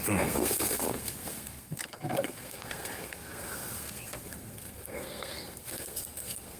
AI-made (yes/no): yes